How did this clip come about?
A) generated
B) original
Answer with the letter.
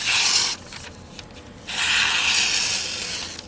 B